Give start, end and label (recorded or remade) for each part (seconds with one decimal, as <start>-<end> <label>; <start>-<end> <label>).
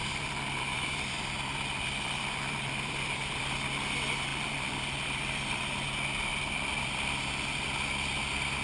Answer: 0.0-3.5 remade; 3.5-4.3 recorded; 4.3-5.6 remade; 5.6-6.3 recorded; 6.3-7.2 remade; 7.2-8.6 recorded